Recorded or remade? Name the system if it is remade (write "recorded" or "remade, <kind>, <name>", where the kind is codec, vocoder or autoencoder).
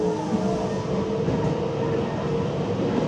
recorded